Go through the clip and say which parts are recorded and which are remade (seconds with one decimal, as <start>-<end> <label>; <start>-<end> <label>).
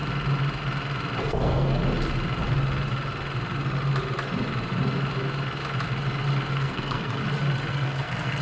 0.0-1.2 recorded; 1.2-1.8 remade; 1.8-6.5 recorded; 6.5-7.2 remade; 7.2-7.7 recorded; 7.7-8.4 remade